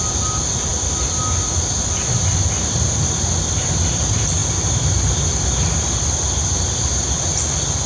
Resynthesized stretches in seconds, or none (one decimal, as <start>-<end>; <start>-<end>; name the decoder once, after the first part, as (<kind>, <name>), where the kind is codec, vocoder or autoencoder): none